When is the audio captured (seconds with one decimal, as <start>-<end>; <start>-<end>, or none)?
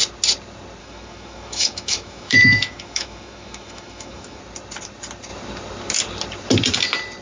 0.0-0.8; 4.4-7.2